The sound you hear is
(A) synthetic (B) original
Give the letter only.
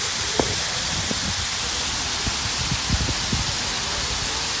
B